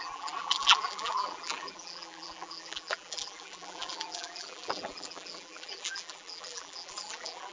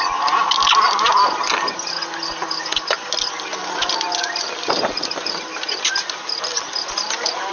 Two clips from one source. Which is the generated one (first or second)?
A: first